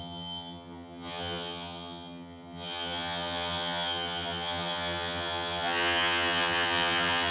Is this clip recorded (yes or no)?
no